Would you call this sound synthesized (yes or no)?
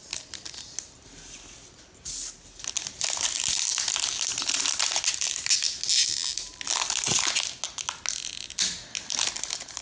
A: no